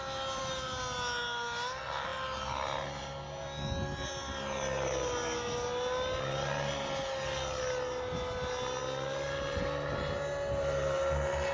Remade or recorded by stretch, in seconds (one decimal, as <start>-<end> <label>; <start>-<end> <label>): 0.0-11.5 recorded